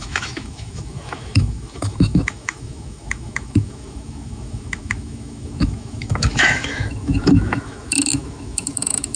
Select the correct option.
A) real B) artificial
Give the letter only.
B